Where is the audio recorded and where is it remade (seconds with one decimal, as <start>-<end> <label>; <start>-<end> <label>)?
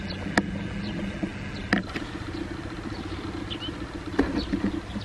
0.0-5.0 recorded